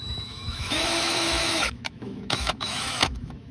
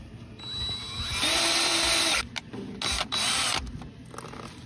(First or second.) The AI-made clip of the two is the first